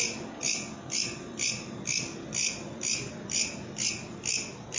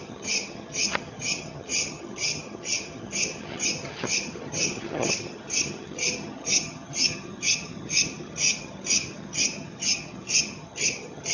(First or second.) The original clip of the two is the first